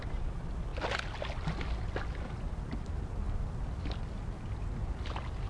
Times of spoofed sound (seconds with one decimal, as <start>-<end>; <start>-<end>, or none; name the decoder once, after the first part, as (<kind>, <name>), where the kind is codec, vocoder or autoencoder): none